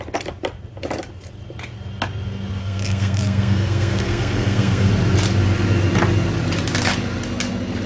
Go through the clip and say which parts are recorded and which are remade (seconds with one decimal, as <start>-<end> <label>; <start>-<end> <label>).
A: 0.0-2.6 recorded; 2.6-4.9 remade; 4.9-7.9 recorded